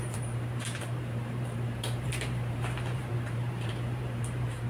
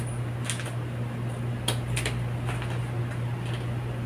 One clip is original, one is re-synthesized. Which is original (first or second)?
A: second